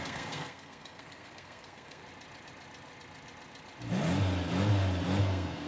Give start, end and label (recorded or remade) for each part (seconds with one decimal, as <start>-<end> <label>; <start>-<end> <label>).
0.0-2.0 remade; 2.0-5.2 recorded; 5.2-5.7 remade